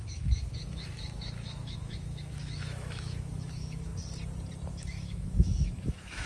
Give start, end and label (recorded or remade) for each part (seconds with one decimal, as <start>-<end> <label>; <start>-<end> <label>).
0.0-3.9 remade; 3.9-4.7 recorded; 4.7-6.3 remade